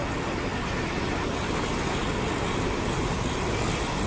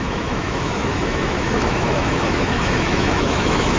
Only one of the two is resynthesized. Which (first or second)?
second